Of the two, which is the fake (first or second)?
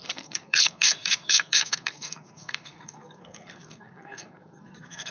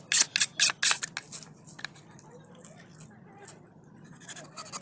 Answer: first